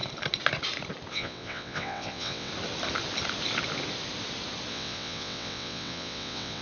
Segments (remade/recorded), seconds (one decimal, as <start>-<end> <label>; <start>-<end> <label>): 0.0-1.1 recorded; 1.1-2.5 remade; 2.5-4.7 recorded; 4.7-6.6 remade